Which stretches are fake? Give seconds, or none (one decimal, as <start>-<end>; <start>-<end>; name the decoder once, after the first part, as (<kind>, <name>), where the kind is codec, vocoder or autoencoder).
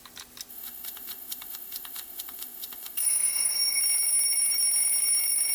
0.5-3.8 (autoencoder, DAC-VAE)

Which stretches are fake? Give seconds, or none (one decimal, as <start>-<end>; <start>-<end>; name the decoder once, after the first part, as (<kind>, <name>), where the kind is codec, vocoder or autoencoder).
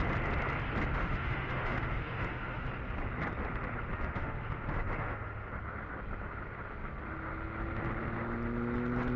0.9-2.6 (autoencoder, DAC-VAE); 3.9-5.5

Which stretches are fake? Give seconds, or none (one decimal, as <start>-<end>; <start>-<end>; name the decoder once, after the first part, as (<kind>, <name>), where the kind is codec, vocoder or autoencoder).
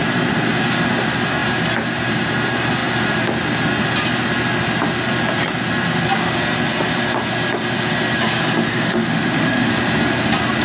8.7-9.7 (autoencoder, DAC-VAE)